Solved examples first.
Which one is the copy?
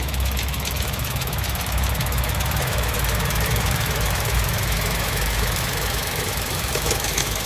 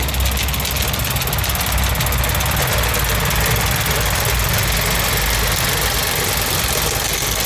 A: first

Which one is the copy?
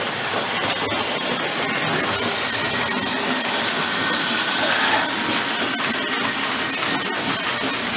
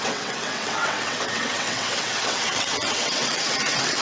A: second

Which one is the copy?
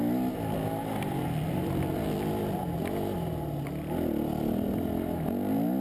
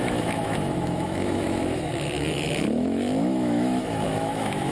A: second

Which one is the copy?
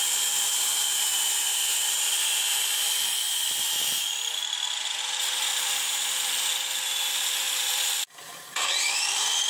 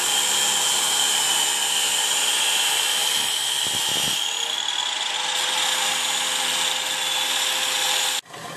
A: first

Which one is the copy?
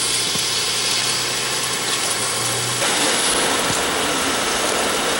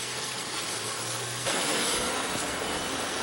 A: second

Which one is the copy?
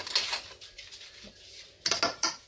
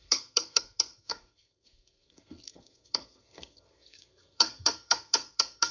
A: second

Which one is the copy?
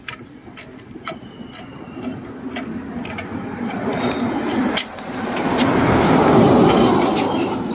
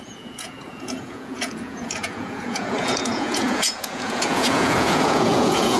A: second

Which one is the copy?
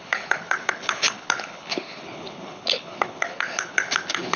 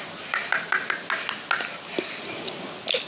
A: first